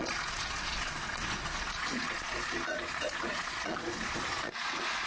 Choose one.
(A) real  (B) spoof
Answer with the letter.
B